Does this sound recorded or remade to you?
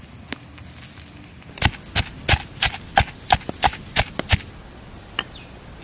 recorded